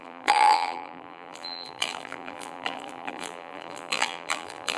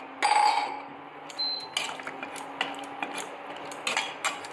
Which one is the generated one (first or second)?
first